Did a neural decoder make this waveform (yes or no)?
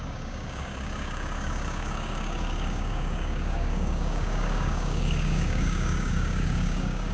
yes